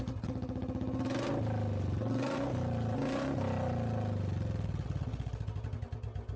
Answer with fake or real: real